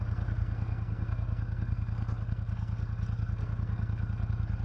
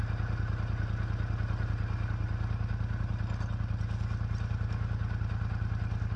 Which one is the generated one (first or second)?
first